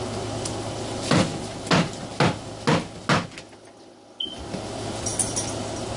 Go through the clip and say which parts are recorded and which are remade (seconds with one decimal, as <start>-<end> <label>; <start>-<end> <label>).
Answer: 0.0-6.0 recorded